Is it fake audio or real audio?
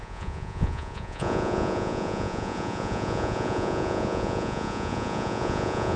fake